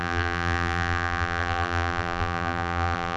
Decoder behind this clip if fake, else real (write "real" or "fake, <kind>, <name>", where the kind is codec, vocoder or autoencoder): fake, vocoder, BigVGAN v2